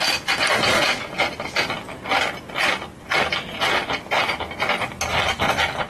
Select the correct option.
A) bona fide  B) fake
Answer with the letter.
A